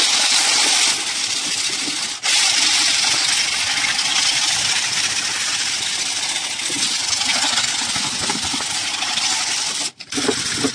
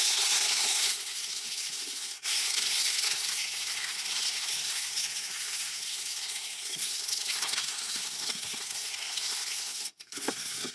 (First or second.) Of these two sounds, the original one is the first